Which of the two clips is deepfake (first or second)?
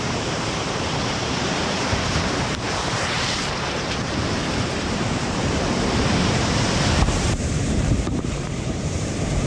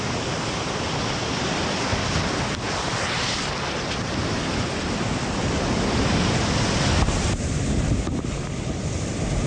first